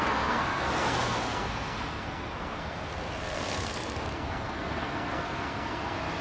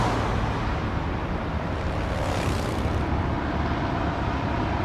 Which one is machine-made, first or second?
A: first